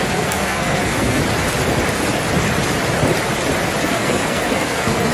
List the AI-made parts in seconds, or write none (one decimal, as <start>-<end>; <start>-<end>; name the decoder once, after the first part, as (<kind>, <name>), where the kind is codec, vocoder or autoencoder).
0.0-1.2 (codec, SNAC); 3.8-5.1